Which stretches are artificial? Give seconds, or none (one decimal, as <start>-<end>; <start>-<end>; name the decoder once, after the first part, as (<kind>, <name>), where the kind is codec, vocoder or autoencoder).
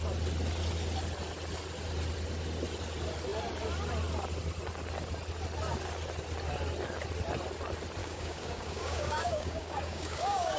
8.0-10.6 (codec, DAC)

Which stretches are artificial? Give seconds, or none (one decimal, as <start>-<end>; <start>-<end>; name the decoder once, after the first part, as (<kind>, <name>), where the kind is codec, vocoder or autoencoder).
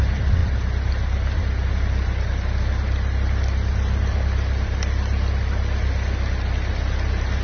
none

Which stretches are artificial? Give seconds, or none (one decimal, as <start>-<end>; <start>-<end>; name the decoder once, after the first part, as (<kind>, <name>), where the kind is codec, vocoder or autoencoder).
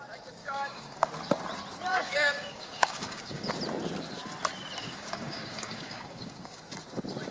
0.4-1.1 (codec, DAC); 1.9-3.5; 4.8-6.6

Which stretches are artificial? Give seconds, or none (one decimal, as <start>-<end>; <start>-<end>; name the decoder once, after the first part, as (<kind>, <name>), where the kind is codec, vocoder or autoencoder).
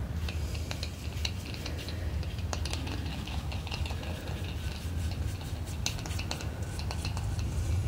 3.1-3.9 (codec, DAC)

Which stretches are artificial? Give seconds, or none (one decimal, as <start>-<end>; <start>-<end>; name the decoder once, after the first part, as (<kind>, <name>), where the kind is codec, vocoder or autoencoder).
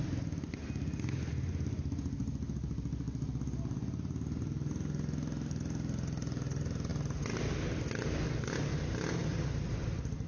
none